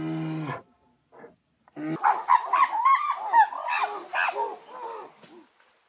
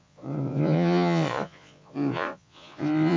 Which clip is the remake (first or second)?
second